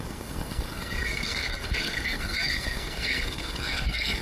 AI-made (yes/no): yes